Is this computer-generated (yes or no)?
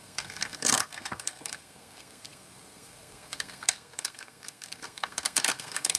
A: yes